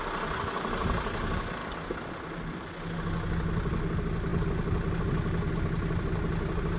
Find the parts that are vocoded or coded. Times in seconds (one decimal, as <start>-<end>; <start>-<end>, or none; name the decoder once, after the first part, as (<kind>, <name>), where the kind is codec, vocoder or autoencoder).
none